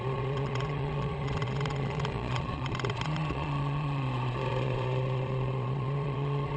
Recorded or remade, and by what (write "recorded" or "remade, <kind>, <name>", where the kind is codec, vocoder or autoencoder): remade, vocoder, Vocos